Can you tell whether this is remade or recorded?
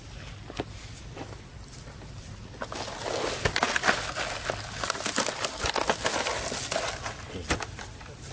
recorded